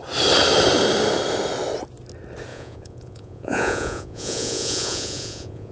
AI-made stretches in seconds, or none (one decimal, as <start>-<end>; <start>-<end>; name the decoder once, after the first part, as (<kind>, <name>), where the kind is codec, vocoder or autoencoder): 2.5-5.7 (vocoder, Vocos)